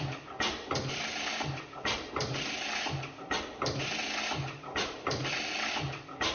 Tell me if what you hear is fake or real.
real